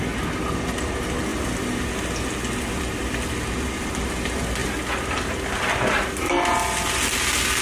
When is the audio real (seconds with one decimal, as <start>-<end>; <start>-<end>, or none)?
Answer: 0.0-7.6